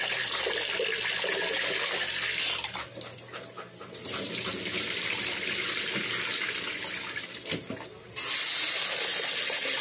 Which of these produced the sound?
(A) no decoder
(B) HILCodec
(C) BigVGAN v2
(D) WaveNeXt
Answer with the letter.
A